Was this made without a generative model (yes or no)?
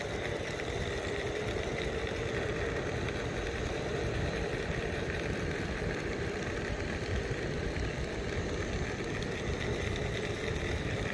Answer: yes